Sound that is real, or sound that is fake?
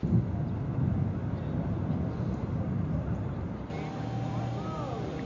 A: real